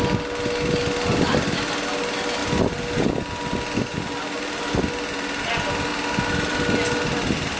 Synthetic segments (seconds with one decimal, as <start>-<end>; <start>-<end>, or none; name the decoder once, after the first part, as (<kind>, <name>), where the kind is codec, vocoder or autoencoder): none